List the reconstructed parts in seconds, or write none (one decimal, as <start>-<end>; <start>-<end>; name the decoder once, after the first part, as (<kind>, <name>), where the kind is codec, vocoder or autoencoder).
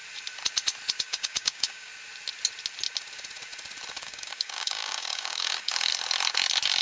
1.0-1.9 (codec, DAC); 3.9-5.9